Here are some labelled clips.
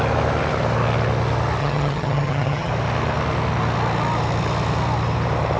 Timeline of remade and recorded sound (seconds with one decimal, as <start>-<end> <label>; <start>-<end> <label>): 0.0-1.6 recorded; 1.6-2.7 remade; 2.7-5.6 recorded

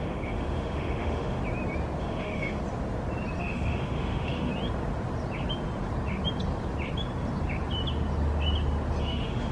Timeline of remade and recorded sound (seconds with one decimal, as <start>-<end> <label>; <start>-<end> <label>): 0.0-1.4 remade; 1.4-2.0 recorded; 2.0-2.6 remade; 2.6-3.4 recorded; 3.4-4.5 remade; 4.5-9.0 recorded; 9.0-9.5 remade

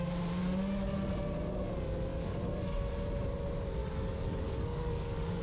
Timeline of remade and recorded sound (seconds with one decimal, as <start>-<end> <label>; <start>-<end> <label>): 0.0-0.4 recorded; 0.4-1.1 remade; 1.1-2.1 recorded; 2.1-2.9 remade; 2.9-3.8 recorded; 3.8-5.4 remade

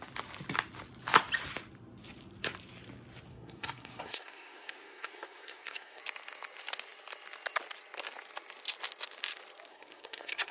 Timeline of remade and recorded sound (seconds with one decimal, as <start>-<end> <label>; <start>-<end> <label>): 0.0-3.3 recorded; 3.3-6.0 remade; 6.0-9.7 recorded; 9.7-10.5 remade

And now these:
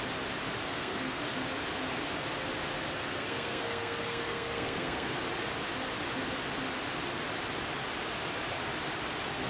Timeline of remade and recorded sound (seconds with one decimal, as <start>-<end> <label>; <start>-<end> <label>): 0.0-0.7 recorded; 0.7-1.2 remade; 1.2-3.1 recorded; 3.1-5.2 remade; 5.2-9.5 recorded